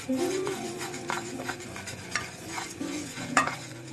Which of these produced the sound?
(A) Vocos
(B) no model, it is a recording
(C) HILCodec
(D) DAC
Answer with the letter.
A